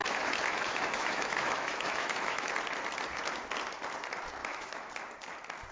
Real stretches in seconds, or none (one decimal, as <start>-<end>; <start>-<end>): 2.5-4.4; 4.9-5.7